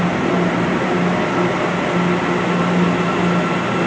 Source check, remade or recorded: recorded